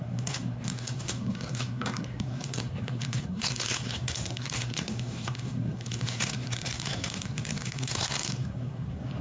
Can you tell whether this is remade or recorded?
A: remade